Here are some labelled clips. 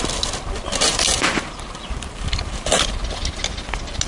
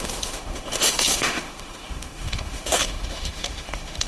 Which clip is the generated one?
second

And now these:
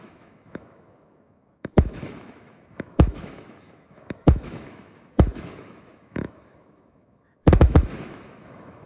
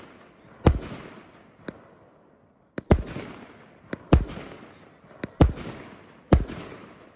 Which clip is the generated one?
first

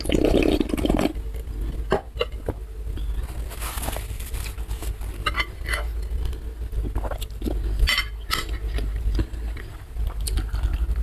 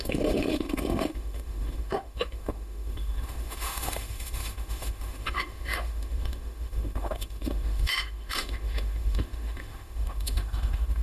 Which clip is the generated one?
second